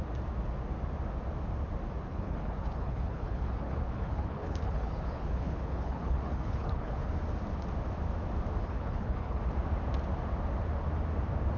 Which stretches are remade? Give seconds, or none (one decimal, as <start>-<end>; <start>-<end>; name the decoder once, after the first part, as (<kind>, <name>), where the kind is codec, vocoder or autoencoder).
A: 2.1-7.1 (codec, HILCodec); 8.6-9.4